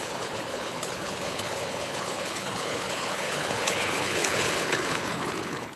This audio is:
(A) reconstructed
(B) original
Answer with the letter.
A